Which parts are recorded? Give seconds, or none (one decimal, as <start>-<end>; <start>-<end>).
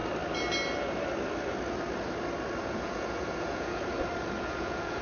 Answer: 0.0-2.6; 3.9-4.4